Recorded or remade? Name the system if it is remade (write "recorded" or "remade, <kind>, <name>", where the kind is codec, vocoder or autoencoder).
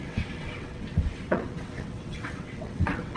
remade, vocoder, WaveNeXt